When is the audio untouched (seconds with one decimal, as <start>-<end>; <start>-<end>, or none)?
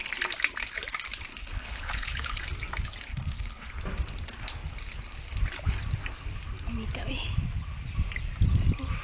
0.0-1.3; 2.4-3.1; 3.7-9.0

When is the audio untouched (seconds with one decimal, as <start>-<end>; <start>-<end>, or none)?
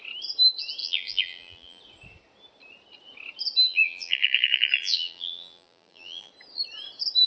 0.0-0.8; 1.8-3.6; 6.3-7.3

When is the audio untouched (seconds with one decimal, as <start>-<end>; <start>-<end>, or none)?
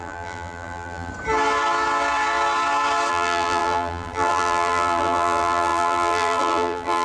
1.1-3.1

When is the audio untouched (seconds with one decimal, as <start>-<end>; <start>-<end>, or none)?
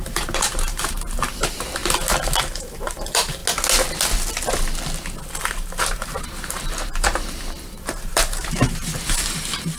1.8-2.4; 3.4-5.4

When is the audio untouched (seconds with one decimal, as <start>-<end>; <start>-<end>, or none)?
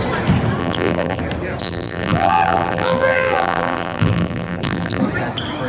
0.0-0.6; 1.2-1.6; 5.0-5.7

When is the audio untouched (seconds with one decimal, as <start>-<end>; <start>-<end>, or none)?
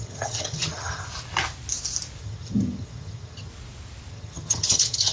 1.1-2.2; 3.5-4.1